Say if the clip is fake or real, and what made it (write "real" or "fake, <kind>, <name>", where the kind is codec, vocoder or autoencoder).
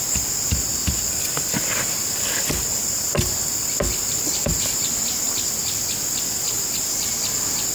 real